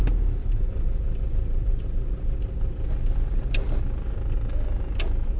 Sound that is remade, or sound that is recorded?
recorded